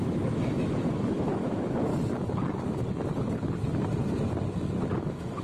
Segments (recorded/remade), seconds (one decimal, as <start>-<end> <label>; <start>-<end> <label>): 0.0-1.9 remade; 1.9-5.0 recorded; 5.0-5.4 remade